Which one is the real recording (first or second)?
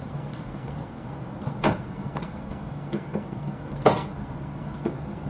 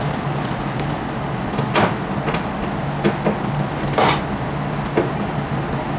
second